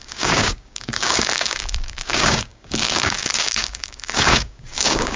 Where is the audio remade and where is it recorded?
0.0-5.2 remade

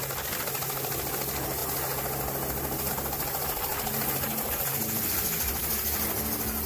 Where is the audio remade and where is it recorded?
0.0-6.7 recorded

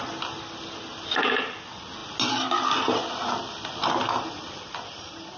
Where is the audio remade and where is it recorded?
0.0-5.4 recorded